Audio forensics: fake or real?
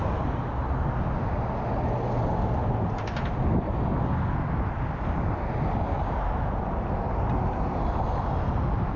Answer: real